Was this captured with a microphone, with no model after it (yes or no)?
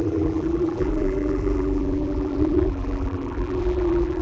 no